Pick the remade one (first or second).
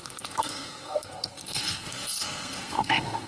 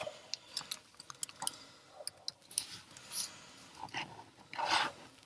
first